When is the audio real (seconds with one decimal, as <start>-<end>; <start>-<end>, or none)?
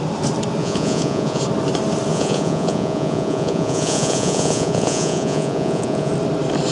0.0-0.6; 1.4-2.1; 6.1-6.7